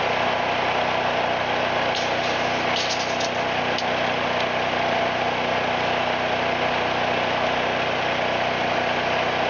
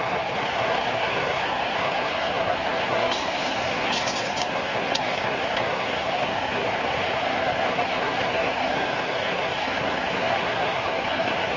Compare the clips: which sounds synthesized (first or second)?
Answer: second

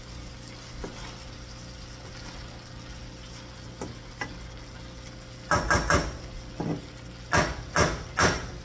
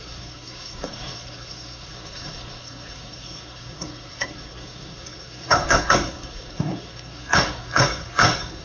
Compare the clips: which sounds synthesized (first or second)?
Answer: second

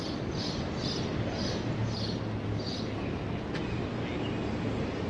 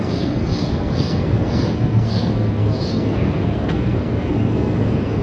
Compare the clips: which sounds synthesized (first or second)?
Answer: second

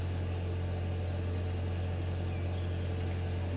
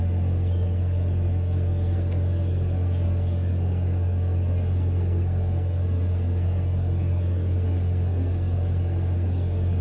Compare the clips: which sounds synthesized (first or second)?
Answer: second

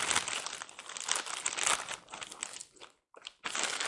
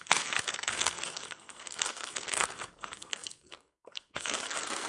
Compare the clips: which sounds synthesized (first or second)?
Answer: second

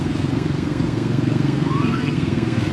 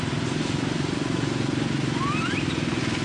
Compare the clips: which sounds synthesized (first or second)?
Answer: first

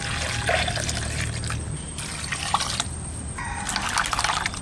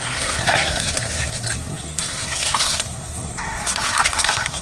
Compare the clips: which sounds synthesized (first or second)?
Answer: second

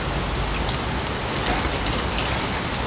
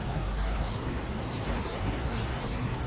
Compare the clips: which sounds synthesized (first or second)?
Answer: second